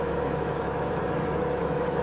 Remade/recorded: remade